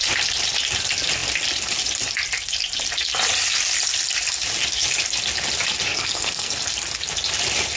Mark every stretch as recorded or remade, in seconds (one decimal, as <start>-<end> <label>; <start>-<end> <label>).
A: 0.0-5.9 recorded; 5.9-6.6 remade; 6.6-7.8 recorded